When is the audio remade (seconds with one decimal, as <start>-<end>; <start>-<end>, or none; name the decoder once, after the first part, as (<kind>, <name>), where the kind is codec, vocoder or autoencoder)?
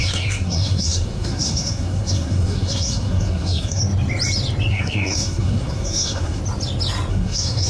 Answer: 0.0-3.8 (codec, SNAC); 4.7-6.4; 7.1-7.7